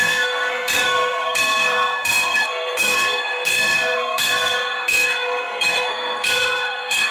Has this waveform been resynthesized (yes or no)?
yes